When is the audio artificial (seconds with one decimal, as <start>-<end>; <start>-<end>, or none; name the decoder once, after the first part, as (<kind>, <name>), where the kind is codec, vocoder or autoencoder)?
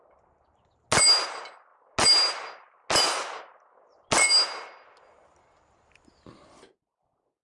none